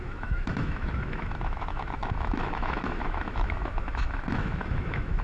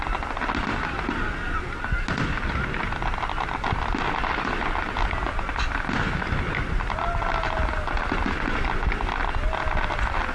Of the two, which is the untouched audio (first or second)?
second